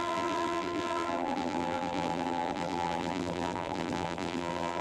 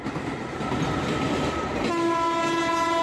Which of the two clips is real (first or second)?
second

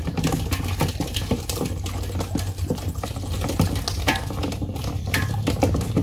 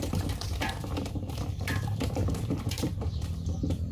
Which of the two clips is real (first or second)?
first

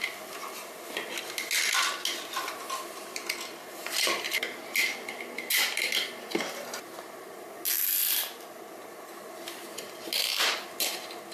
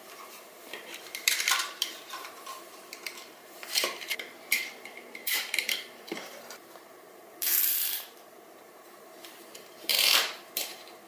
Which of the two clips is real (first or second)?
first